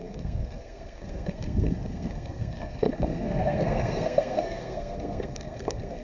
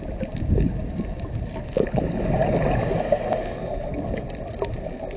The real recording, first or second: second